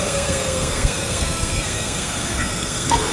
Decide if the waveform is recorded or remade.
remade